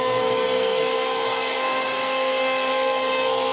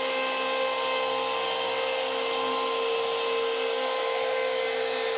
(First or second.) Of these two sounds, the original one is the second